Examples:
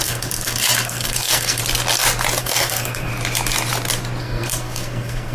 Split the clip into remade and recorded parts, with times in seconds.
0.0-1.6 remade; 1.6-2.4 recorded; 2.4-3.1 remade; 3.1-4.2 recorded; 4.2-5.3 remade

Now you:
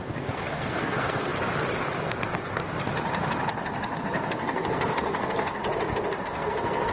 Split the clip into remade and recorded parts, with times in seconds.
0.0-1.3 remade; 1.3-2.0 recorded; 2.0-2.6 remade; 2.6-4.0 recorded; 4.0-5.6 remade; 5.6-6.2 recorded; 6.2-6.9 remade

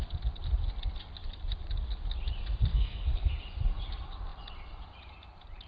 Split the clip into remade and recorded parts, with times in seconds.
0.0-2.7 recorded; 2.7-3.3 remade; 3.3-5.7 recorded